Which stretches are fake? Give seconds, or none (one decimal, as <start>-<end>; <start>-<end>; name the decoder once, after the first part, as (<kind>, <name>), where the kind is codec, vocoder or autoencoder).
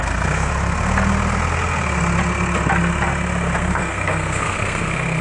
0.0-0.5 (codec, SNAC); 3.6-5.2